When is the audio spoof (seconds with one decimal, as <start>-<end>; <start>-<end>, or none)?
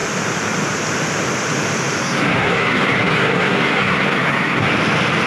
2.0-4.7